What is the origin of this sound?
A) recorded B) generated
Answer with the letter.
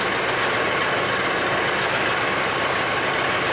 A